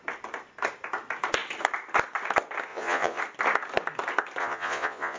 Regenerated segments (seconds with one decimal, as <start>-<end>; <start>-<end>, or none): 2.7-3.2; 4.4-5.2